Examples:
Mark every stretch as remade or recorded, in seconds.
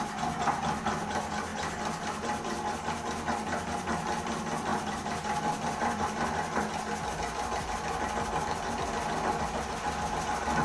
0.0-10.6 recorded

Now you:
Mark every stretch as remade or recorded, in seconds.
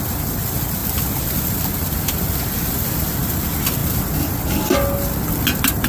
0.0-5.9 recorded